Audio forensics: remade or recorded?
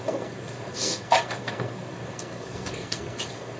remade